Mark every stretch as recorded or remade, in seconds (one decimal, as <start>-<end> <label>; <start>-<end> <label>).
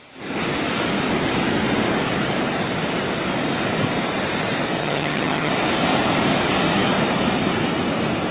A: 0.0-4.8 recorded; 4.8-5.5 remade; 5.5-8.3 recorded